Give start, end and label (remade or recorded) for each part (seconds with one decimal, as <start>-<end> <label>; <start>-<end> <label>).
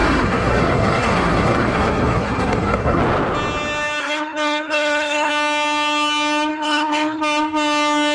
0.0-3.0 remade; 3.0-4.0 recorded; 4.0-5.3 remade; 5.3-6.5 recorded; 6.5-7.2 remade; 7.2-8.1 recorded